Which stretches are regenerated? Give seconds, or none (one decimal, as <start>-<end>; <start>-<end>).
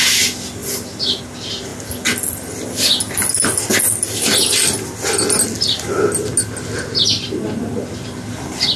none